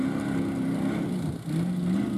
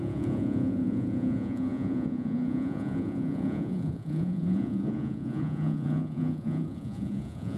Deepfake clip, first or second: second